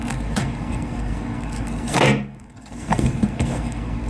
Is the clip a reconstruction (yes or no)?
yes